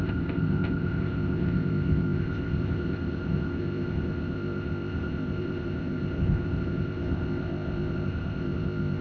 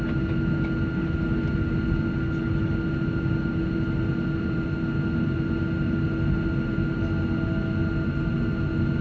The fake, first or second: first